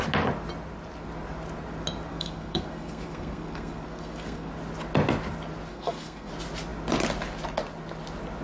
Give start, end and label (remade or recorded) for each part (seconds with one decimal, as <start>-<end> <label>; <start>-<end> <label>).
0.0-2.1 recorded; 2.1-4.5 remade; 4.5-5.7 recorded; 5.7-6.3 remade; 6.3-8.4 recorded